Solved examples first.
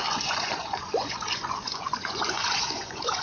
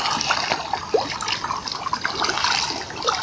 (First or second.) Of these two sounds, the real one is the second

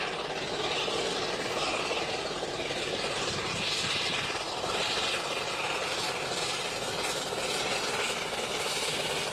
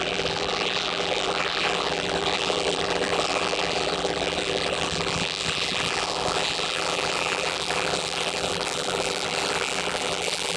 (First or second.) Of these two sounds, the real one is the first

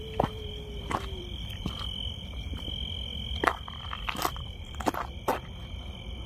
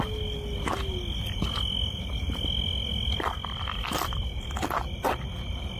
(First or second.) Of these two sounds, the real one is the second